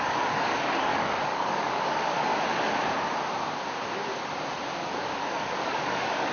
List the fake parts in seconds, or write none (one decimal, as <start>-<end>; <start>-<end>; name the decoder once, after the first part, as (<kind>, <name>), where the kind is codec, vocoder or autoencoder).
0.0-2.3 (codec, DAC); 5.0-6.3